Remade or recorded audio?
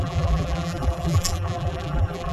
remade